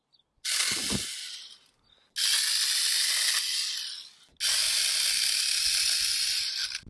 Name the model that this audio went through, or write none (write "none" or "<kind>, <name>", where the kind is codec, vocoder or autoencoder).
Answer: none